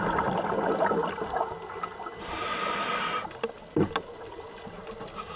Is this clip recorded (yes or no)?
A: yes